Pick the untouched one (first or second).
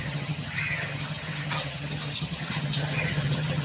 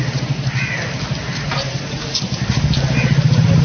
second